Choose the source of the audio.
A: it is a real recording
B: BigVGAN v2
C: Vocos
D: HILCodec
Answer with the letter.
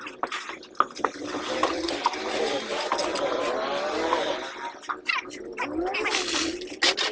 A